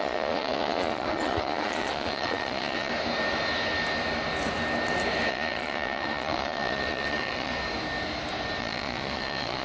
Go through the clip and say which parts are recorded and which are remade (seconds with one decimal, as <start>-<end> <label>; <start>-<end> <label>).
0.0-2.9 remade; 2.9-5.3 recorded; 5.3-7.5 remade; 7.5-8.6 recorded; 8.6-9.6 remade